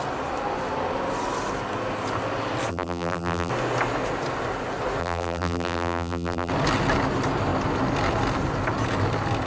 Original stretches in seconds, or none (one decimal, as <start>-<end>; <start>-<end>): 0.0-2.7; 3.5-5.0; 6.5-9.5

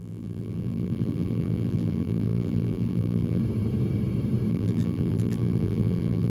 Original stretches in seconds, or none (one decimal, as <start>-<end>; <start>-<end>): 3.4-4.5

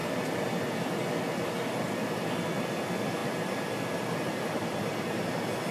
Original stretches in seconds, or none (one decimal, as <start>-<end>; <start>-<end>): 0.5-3.2

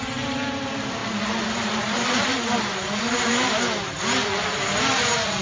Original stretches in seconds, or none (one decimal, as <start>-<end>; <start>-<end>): 1.0-1.5; 3.9-4.9

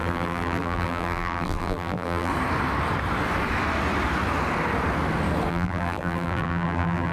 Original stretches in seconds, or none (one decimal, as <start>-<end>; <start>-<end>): 2.3-5.5